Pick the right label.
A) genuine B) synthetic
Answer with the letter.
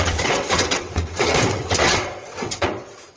B